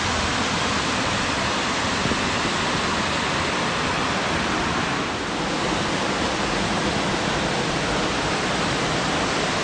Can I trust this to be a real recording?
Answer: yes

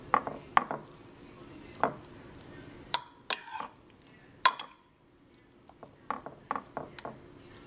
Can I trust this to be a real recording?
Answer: yes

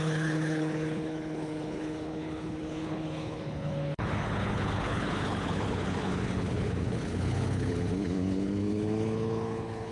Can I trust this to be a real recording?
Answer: no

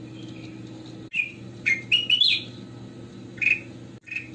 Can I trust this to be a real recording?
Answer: yes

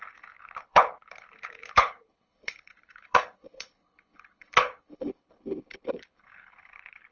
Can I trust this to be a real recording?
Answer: no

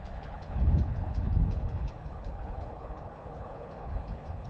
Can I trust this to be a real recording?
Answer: no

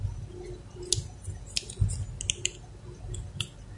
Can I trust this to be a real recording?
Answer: yes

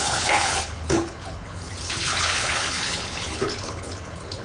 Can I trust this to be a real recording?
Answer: no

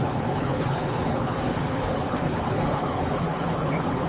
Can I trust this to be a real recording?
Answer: no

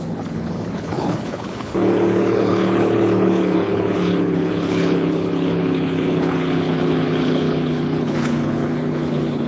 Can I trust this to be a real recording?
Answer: no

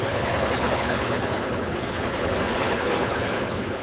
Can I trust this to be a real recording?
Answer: no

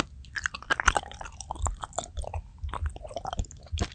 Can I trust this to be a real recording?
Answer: yes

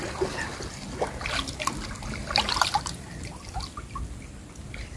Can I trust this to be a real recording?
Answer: yes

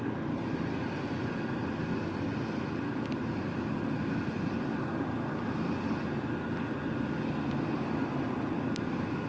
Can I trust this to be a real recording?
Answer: yes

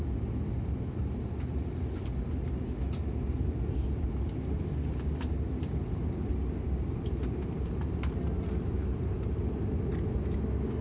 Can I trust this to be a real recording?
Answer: yes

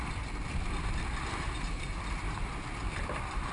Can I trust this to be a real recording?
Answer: yes